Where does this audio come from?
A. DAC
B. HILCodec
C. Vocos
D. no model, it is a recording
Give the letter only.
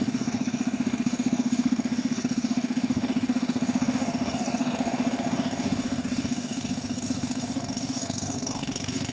A